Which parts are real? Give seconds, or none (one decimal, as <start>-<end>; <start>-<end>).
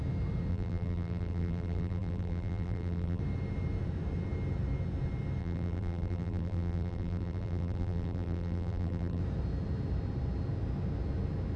0.0-0.5; 3.2-5.4; 9.2-11.6